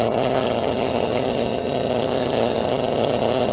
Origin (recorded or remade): remade